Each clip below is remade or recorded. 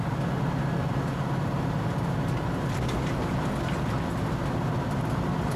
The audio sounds recorded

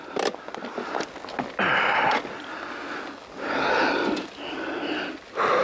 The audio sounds recorded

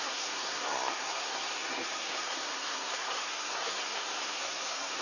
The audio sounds remade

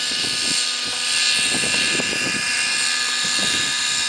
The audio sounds recorded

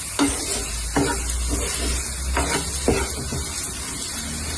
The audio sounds recorded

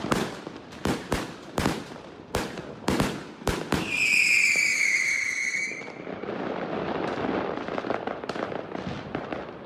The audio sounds remade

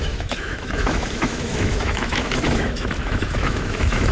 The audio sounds remade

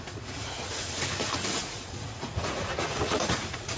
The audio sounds remade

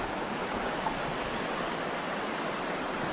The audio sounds recorded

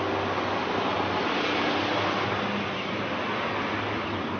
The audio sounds recorded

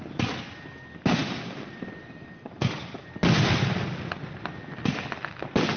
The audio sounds remade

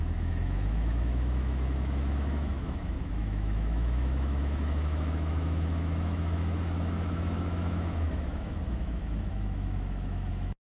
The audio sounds remade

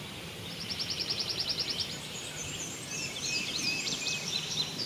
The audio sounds remade